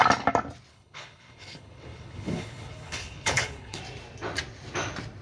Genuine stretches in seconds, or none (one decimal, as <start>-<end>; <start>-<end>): 0.0-0.7; 3.8-5.2